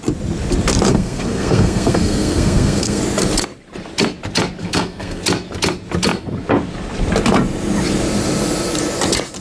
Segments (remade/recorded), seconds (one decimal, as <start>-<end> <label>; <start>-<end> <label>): 0.0-0.9 recorded; 0.9-3.0 remade; 3.0-4.6 recorded; 4.6-5.2 remade; 5.2-9.4 recorded